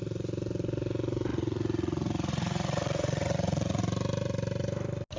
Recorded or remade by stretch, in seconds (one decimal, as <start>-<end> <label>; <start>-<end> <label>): 0.0-1.3 recorded; 1.3-3.8 remade; 3.8-5.2 recorded